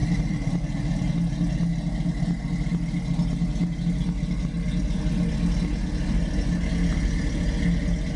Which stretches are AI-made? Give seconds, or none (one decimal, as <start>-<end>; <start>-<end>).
0.0-1.1